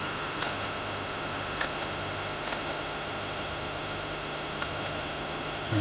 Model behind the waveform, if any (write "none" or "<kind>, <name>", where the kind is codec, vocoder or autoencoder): autoencoder, DAC-VAE